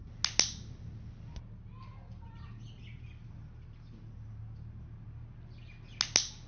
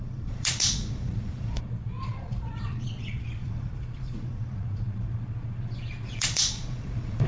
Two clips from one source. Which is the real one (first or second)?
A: first